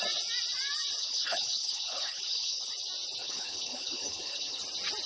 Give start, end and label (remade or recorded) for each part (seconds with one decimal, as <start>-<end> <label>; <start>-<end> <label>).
0.0-1.0 recorded; 1.0-2.7 remade; 2.7-3.2 recorded; 3.2-4.6 remade; 4.6-5.1 recorded